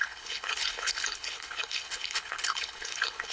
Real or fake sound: fake